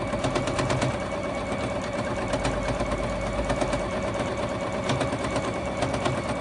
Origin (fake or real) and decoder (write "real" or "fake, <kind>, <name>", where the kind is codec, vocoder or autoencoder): real